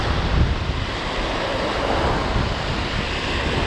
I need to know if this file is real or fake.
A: real